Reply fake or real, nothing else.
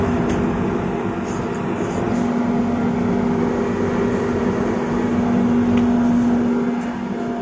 real